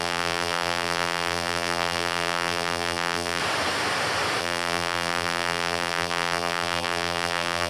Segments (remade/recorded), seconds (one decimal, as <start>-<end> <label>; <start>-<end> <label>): 0.0-3.4 remade; 3.4-4.4 recorded; 4.4-7.7 remade